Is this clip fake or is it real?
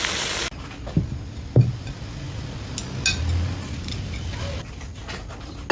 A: real